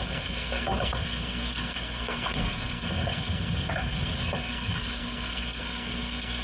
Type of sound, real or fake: fake